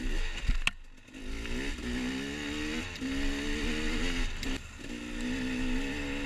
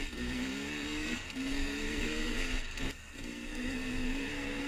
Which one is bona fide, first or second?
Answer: first